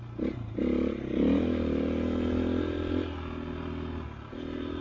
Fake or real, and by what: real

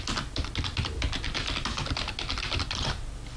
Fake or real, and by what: real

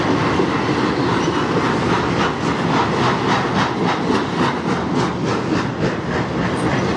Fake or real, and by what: real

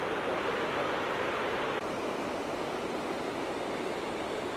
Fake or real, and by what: real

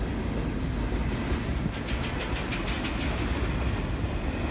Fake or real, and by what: real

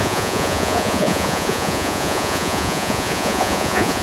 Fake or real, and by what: fake, vocoder, Vocos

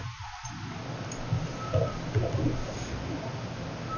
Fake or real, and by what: real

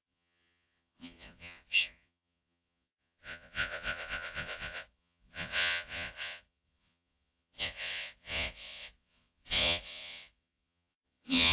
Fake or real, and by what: fake, vocoder, Vocos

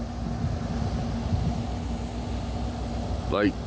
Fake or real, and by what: real